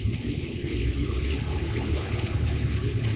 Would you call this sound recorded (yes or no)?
no